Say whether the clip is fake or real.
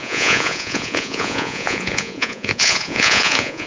fake